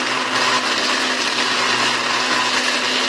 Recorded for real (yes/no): yes